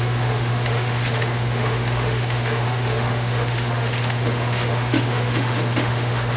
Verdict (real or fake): fake